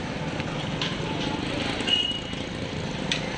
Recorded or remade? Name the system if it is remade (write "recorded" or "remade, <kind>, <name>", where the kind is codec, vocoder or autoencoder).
recorded